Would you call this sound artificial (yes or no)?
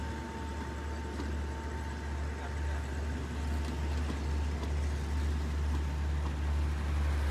no